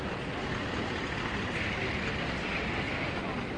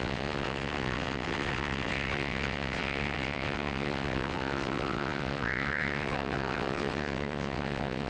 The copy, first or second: second